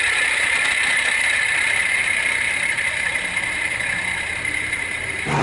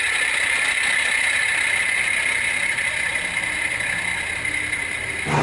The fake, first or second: first